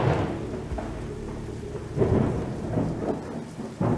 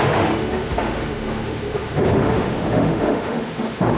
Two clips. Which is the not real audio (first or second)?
second